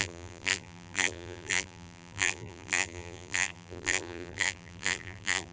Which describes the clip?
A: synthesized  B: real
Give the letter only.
A